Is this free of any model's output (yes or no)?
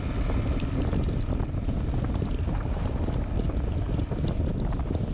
yes